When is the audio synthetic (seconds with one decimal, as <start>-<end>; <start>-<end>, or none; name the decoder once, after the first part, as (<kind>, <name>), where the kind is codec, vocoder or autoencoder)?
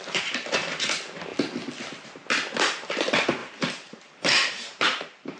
0.0-1.3 (vocoder, BigVGAN v2); 2.6-5.4